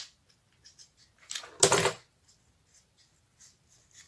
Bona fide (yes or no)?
yes